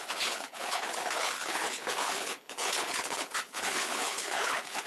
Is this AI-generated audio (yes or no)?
yes